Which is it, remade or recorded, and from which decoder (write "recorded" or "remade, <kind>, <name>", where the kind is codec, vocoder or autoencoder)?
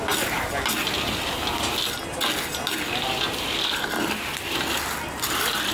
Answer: recorded